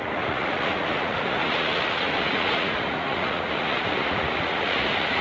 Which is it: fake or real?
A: fake